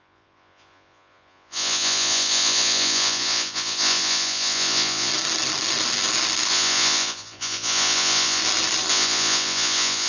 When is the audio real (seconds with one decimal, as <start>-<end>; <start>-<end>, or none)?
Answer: 5.1-6.5; 8.4-8.9